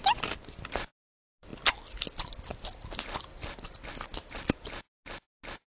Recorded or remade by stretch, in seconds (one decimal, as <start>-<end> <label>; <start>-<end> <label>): 0.0-5.7 recorded